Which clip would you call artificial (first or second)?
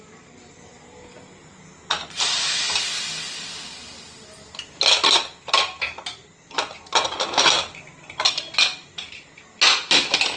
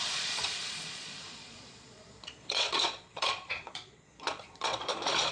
second